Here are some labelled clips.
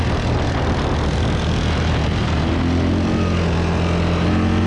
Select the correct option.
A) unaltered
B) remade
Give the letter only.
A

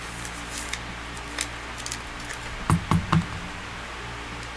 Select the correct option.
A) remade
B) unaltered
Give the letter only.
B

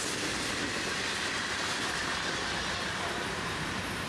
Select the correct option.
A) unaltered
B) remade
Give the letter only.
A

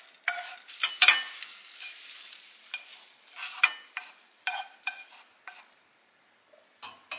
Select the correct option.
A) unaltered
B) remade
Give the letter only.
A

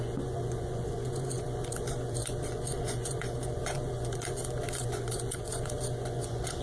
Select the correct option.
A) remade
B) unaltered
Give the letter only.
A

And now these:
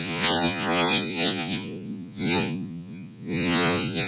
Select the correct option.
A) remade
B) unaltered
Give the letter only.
A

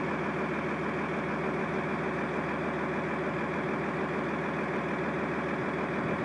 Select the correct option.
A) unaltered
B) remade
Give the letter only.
A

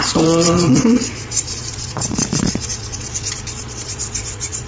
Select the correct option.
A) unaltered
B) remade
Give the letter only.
B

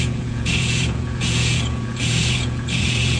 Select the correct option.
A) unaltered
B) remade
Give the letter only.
B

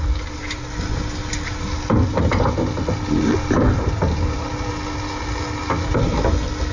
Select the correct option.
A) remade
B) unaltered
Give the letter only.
B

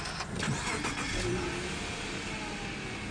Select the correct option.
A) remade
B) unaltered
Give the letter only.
B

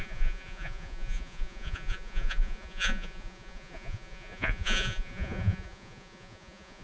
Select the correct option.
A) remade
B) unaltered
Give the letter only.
A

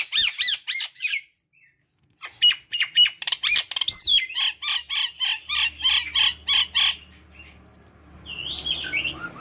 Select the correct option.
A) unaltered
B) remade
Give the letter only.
A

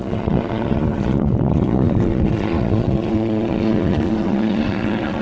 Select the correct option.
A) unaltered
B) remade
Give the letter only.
B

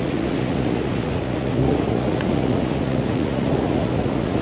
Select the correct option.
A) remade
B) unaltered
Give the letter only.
A